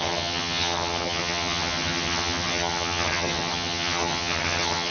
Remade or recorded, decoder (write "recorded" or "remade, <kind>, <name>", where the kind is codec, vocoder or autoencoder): remade, vocoder, HiFi-GAN